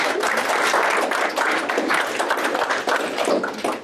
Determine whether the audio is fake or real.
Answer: real